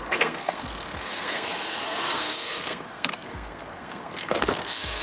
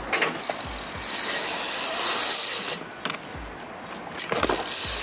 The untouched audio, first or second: second